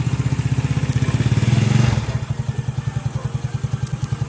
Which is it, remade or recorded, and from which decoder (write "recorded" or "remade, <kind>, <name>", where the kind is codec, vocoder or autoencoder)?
recorded